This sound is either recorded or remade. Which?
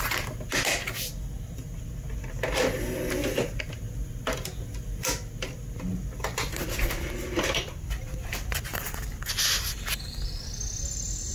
recorded